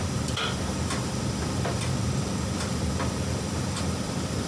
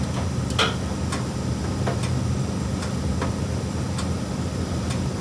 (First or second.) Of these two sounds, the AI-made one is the first